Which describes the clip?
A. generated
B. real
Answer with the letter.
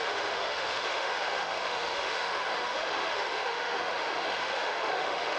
A